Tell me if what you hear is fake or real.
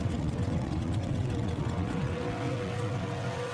fake